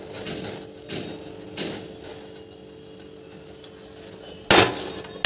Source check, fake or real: real